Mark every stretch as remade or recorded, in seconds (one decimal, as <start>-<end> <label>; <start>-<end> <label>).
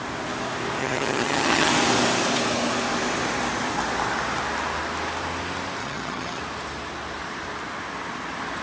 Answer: 0.0-0.8 recorded; 0.8-1.7 remade; 1.7-5.8 recorded; 5.8-6.4 remade; 6.4-8.6 recorded